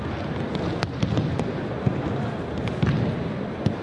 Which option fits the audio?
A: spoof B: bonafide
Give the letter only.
B